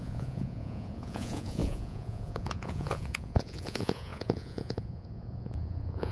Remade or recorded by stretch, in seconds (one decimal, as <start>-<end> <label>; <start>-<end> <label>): 0.0-6.1 remade